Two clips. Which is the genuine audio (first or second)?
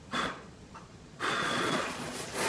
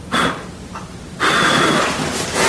second